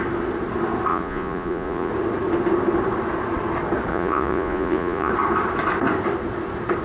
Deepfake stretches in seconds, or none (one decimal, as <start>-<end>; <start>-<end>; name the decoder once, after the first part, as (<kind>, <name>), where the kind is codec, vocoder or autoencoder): 0.9-1.9 (vocoder, Vocos); 3.9-5.1